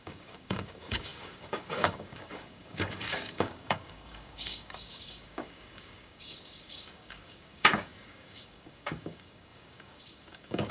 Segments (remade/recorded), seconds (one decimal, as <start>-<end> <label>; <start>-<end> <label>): 0.0-10.7 remade